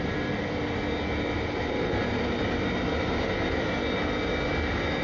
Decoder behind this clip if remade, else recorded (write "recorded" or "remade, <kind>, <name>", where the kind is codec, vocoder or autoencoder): recorded